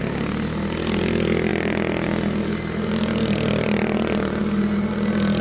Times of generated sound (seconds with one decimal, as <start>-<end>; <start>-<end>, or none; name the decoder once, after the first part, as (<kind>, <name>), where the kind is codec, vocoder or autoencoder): none